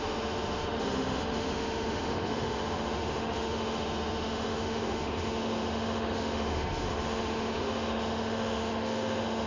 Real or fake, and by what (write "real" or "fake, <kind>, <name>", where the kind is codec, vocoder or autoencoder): fake, autoencoder, DAC-VAE